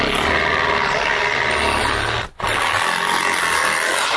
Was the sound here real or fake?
real